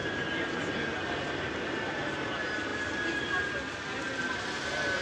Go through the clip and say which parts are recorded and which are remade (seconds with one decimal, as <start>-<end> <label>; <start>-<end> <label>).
0.0-5.0 recorded